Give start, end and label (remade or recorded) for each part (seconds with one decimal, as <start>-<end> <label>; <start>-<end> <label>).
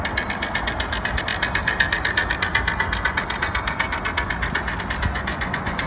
0.0-5.3 recorded; 5.3-5.9 remade